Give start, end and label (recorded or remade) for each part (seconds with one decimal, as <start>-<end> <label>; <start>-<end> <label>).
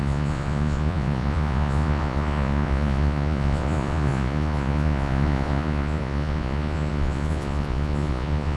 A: 0.0-8.6 remade